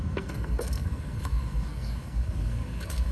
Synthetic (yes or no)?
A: yes